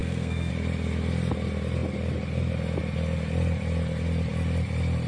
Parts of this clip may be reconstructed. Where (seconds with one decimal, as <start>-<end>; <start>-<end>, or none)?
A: 0.0-0.5

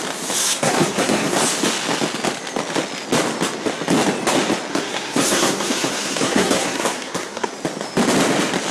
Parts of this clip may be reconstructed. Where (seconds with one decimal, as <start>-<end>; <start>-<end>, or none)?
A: 0.4-1.4; 4.7-7.5

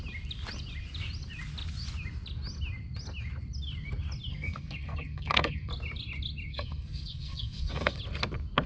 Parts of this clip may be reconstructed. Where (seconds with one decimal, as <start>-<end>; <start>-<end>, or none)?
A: 4.3-5.7; 6.5-8.0

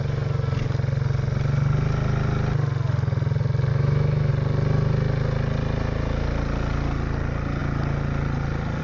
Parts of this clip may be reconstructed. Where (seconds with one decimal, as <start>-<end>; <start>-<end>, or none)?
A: 3.7-4.3

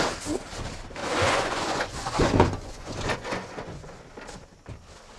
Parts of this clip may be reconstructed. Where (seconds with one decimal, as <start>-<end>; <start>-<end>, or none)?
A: 1.0-4.1